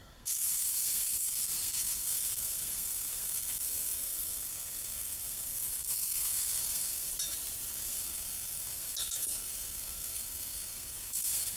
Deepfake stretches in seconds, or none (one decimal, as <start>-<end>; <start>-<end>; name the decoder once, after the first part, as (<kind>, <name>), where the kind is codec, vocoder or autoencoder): 0.0-7.1 (codec, SNAC); 7.7-11.6

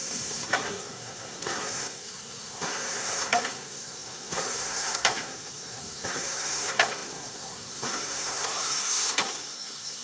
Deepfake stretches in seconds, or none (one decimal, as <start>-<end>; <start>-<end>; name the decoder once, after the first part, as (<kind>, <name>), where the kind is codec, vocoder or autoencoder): 0.0-10.0 (codec, SNAC)